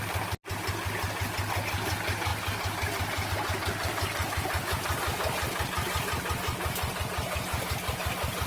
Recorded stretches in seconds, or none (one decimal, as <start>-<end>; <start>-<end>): 0.0-8.5